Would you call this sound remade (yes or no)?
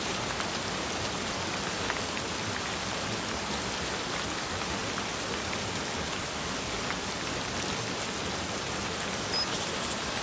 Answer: no